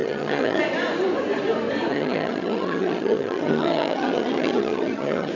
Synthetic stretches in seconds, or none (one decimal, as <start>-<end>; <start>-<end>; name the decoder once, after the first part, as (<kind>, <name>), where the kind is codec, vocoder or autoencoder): 0.0-0.6 (vocoder, HiFi-GAN); 1.9-5.3